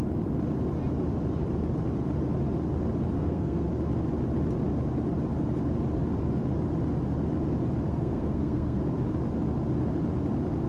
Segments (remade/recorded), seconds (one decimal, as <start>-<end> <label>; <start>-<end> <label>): 0.0-3.2 recorded; 3.2-3.7 remade; 3.7-7.9 recorded; 7.9-8.8 remade; 8.8-10.7 recorded